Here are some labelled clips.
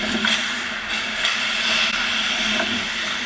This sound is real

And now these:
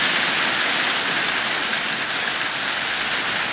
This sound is real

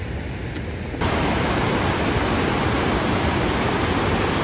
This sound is real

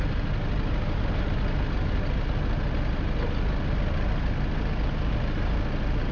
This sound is real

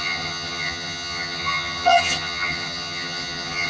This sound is fake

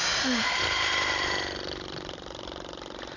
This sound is real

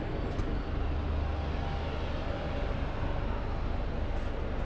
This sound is real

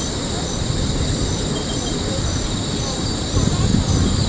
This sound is real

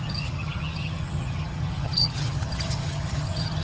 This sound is fake